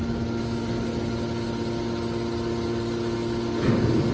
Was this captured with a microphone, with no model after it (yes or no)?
yes